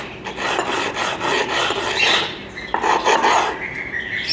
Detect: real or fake real